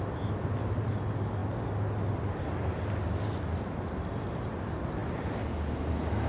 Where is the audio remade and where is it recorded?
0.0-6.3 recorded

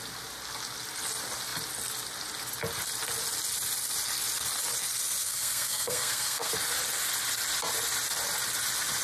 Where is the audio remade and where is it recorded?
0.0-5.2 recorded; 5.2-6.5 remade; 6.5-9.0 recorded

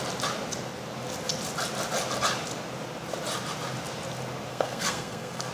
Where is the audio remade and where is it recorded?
0.0-4.5 recorded; 4.5-5.5 remade

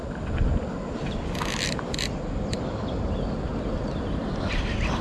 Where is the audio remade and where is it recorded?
0.0-5.0 recorded

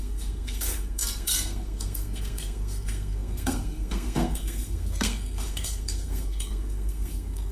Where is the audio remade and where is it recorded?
0.0-7.5 remade

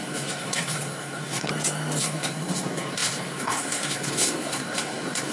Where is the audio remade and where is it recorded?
0.0-1.5 remade; 1.5-2.0 recorded; 2.0-5.3 remade

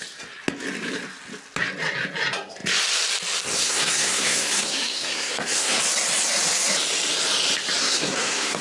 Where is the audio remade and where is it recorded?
0.0-3.6 recorded; 3.6-5.8 remade; 5.8-7.8 recorded; 7.8-8.6 remade